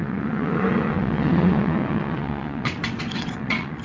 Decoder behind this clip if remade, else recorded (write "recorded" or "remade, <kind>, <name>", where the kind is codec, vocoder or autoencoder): remade, vocoder, WaveNeXt